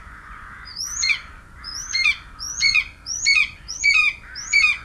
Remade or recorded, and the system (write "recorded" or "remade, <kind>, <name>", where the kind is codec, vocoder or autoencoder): remade, vocoder, Vocos